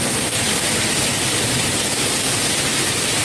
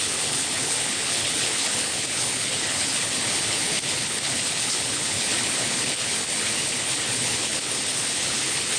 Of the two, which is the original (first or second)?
first